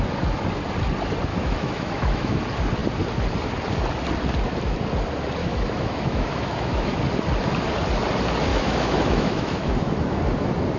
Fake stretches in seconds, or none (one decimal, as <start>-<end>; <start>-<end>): 1.3-2.4; 5.4-7.0; 8.5-10.2